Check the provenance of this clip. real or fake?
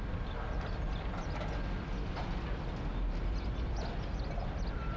real